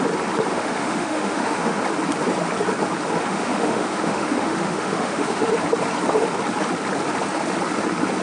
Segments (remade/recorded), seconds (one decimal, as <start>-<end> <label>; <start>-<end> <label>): 0.0-0.5 recorded; 0.5-1.8 remade; 1.8-3.3 recorded; 3.3-5.5 remade; 5.5-8.2 recorded